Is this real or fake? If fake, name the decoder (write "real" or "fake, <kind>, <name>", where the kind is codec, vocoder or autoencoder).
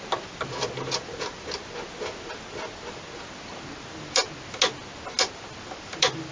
real